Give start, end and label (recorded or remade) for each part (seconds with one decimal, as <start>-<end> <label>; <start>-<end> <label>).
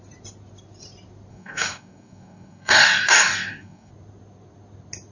0.0-1.3 recorded; 1.3-3.9 remade; 3.9-5.1 recorded